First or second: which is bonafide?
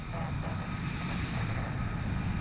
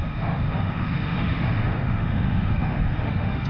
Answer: first